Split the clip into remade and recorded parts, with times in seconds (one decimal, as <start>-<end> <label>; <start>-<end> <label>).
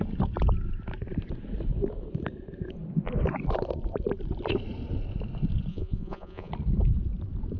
0.0-5.7 recorded; 5.7-6.5 remade; 6.5-7.6 recorded